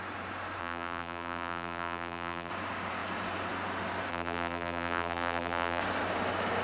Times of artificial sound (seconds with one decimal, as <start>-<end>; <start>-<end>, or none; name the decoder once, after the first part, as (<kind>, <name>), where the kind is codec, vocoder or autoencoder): 0.6-2.5 (vocoder, BigVGAN v2); 4.1-5.8